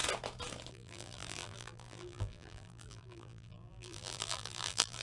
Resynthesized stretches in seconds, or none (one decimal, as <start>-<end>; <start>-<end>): 0.7-5.0